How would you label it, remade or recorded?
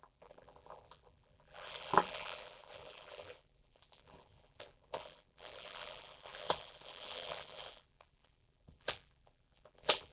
remade